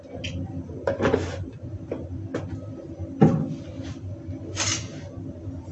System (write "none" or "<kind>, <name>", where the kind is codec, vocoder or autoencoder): none